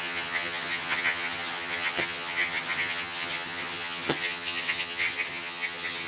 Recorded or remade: remade